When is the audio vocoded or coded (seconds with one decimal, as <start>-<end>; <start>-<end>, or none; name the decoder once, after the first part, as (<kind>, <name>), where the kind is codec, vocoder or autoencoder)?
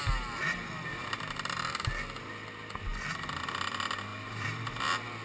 1.0-1.7 (vocoder, BigVGAN v2); 4.1-4.6